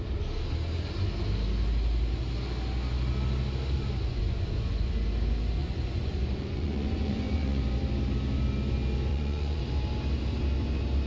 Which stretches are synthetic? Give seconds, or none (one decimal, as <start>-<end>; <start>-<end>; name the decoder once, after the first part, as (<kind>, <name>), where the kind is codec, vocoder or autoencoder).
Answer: 4.1-4.9 (vocoder, Vocos); 5.6-7.6; 9.1-9.6